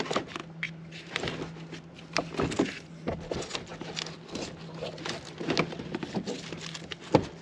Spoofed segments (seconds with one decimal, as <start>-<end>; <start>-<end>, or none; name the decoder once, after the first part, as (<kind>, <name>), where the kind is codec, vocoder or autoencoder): none